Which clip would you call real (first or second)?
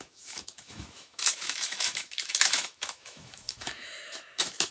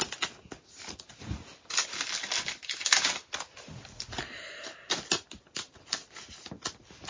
second